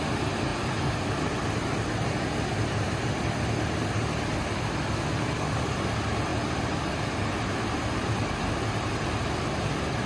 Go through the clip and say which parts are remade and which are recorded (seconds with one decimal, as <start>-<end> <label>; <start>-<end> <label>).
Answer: 0.0-0.5 recorded; 0.5-1.3 remade; 1.3-10.1 recorded